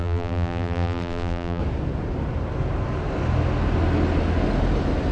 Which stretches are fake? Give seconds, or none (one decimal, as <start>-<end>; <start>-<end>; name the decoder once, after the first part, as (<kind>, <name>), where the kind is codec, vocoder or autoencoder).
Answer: 0.0-1.6 (vocoder, BigVGAN v2)